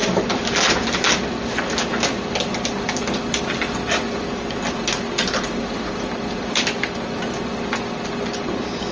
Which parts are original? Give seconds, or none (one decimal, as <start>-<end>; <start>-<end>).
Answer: 0.0-8.9